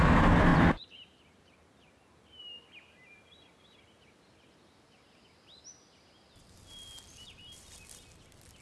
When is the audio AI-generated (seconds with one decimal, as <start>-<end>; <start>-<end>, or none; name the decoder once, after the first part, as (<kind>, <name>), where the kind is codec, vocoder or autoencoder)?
0.5-2.4 (vocoder, BigVGAN v2)